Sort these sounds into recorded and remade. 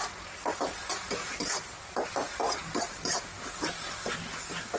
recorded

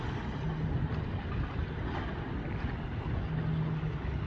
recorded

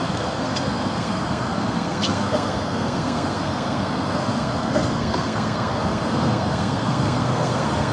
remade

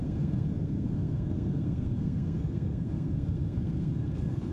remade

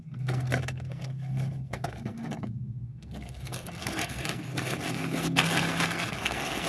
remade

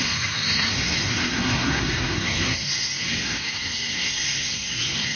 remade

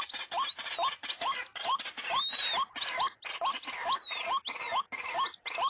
recorded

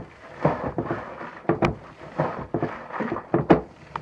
recorded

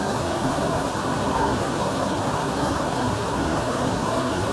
remade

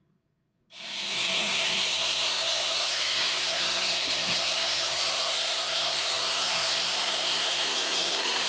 remade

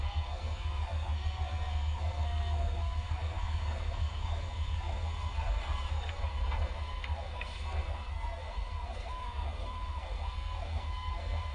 remade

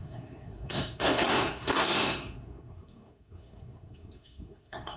remade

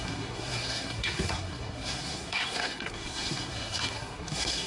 remade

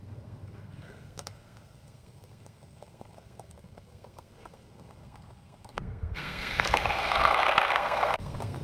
remade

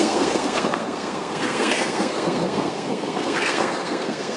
remade